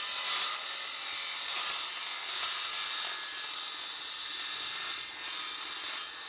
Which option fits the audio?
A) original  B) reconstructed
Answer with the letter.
A